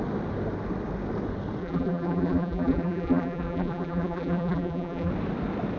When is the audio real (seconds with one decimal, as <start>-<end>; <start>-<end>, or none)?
0.0-1.6; 5.1-5.8